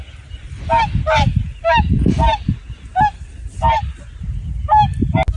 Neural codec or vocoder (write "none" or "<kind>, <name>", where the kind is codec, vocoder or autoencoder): none